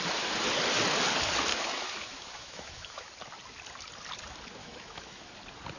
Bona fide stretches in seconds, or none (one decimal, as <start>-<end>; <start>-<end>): 0.0-1.5; 3.1-4.6; 5.3-5.8